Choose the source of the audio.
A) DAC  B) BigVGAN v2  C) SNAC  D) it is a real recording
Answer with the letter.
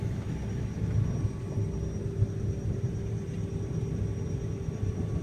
D